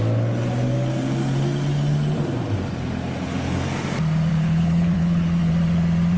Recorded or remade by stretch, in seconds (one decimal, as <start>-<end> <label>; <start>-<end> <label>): 0.0-4.3 recorded; 4.3-5.5 remade; 5.5-6.2 recorded